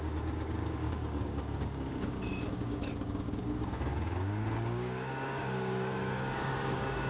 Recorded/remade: remade